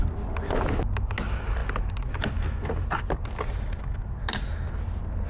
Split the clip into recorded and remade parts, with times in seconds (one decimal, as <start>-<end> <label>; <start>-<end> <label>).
0.0-5.3 recorded